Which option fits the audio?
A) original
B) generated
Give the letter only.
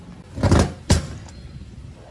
A